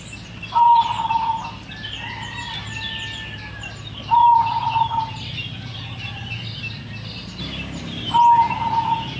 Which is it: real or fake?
real